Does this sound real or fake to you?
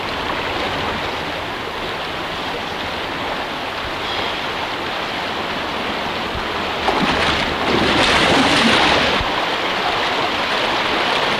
real